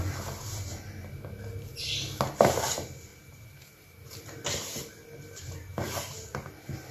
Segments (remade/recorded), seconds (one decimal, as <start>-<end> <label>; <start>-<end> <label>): 0.0-3.1 recorded; 3.1-4.1 remade; 4.1-6.9 recorded